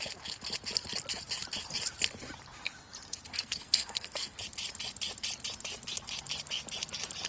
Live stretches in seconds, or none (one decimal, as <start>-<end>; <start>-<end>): 0.0-3.3; 4.4-7.3